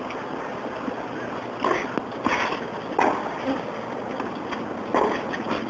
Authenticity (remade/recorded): recorded